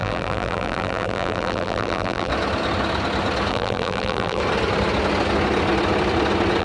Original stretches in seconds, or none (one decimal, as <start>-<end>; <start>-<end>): 2.3-3.5; 4.4-6.6